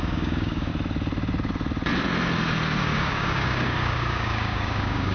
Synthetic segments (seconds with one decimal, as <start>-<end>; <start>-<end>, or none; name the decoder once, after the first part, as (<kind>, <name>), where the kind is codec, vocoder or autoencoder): 0.0-0.7 (codec, DAC); 2.8-5.1